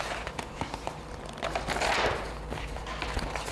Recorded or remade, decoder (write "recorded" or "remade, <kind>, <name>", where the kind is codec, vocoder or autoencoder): recorded